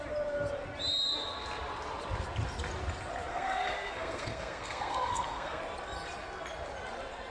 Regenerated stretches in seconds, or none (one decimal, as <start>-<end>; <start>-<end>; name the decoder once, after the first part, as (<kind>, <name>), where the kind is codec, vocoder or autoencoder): 3.3-5.6 (codec, SNAC)